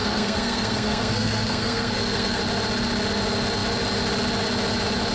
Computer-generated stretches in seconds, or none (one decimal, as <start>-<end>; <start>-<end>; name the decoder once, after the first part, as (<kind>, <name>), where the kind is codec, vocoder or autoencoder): 0.0-2.4 (codec, SNAC)